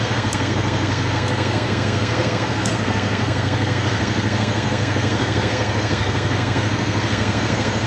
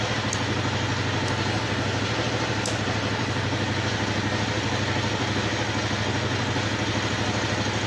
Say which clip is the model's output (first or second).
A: first